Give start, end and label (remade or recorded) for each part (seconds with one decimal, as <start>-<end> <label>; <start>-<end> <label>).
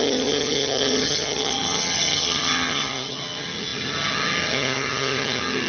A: 0.0-5.7 remade